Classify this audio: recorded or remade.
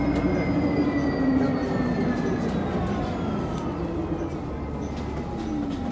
recorded